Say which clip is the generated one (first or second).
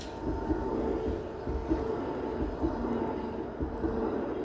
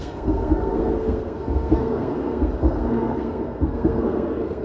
second